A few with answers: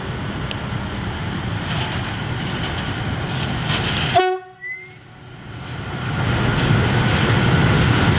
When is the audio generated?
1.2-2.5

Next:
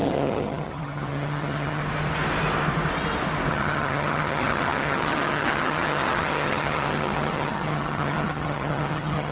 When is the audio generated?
0.0-1.8; 3.5-9.3

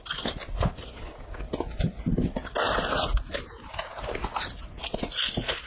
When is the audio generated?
none

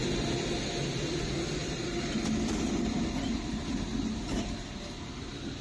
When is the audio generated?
1.6-3.5

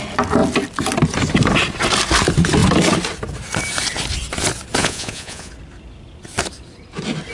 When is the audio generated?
4.8-5.5

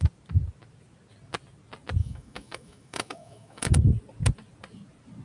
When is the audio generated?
2.0-3.7